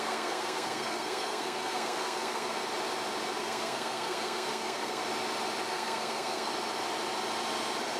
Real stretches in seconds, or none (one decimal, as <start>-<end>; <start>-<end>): 2.6-3.4; 5.0-5.7; 6.5-8.0